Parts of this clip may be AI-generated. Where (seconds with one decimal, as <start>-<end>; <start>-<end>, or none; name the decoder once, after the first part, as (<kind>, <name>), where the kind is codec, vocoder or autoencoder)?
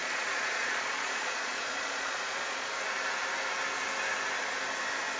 0.0-2.7 (vocoder, Vocos)